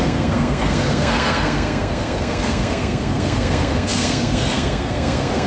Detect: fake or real fake